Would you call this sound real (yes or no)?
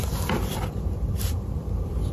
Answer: no